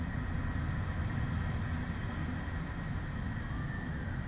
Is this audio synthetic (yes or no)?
no